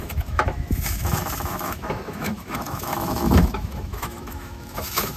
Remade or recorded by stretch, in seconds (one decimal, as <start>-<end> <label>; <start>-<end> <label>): 0.0-5.2 remade